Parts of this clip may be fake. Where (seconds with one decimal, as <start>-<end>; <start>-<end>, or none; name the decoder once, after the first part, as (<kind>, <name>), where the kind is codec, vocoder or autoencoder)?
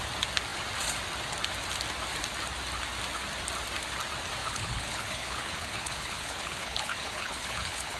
4.4-8.0 (codec, HILCodec)